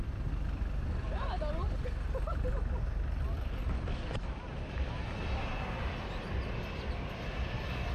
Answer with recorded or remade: recorded